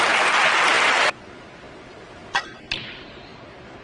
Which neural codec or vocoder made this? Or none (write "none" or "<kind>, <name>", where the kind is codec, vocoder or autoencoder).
none